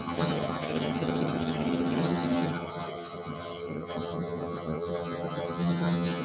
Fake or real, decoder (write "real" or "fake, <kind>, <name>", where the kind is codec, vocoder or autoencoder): fake, vocoder, HiFi-GAN